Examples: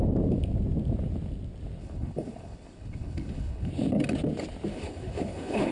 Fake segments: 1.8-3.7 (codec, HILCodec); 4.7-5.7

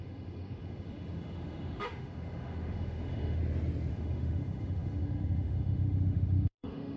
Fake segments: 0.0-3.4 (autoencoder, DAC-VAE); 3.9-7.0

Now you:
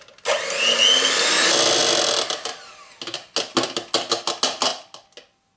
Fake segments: none

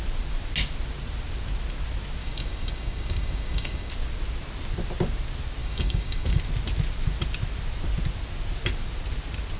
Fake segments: 2.2-3.9 (codec, DAC); 5.6-6.4

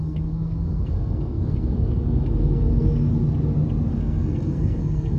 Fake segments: 0.0-3.1 (codec, SNAC); 3.9-5.2

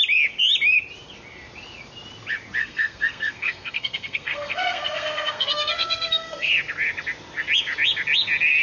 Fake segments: 2.6-6.5 (codec, SNAC)

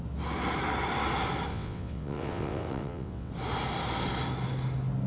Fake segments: 1.5-3.3 (vocoder, WaveNeXt)